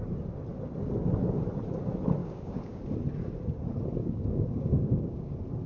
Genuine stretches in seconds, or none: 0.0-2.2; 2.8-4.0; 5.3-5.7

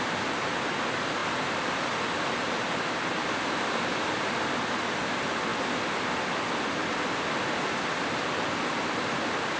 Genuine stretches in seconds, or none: 0.0-9.6

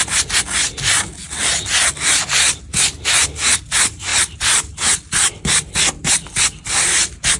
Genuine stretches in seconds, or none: 0.0-4.1

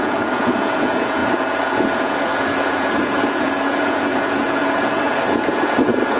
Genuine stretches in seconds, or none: none

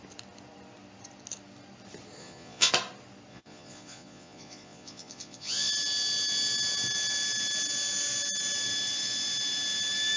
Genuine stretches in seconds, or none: 0.0-2.2; 2.7-3.3; 5.7-10.2

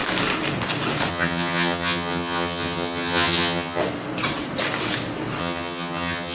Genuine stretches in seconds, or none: 0.0-1.1; 3.8-5.4

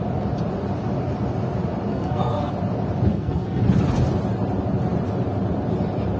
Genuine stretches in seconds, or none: 0.0-1.9; 2.5-3.1; 3.6-6.2

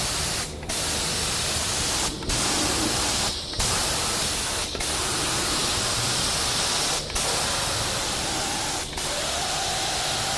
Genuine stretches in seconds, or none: 0.0-10.4